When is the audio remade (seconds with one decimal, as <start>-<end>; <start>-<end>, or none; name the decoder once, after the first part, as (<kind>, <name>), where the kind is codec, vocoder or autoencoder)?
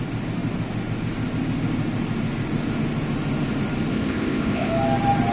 3.9-4.7 (codec, ZipCodec)